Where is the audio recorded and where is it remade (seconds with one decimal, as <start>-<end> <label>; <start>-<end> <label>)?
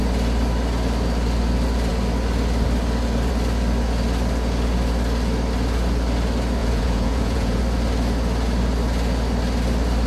0.0-6.6 recorded; 6.6-7.6 remade; 7.6-10.1 recorded